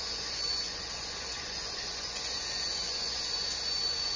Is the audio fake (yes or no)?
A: yes